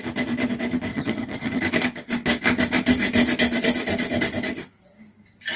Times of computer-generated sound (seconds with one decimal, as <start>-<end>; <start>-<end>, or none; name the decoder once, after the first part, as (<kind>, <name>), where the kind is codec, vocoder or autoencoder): 0.9-1.6 (vocoder, HiFi-GAN)